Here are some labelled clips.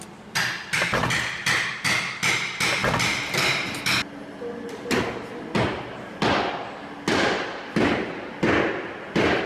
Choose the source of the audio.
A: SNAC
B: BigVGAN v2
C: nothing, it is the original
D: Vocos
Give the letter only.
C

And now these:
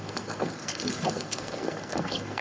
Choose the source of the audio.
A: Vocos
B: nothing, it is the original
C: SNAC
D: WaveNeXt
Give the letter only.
C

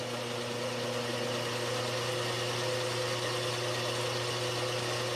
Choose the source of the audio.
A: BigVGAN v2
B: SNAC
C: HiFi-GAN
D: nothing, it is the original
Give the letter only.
D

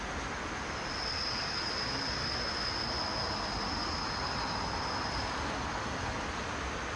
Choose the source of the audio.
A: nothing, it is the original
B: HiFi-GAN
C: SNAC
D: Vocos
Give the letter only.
A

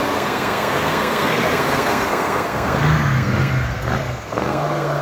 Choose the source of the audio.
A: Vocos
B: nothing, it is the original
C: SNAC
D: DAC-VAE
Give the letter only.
C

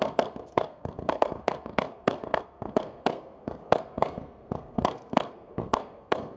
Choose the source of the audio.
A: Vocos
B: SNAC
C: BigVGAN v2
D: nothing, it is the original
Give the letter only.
B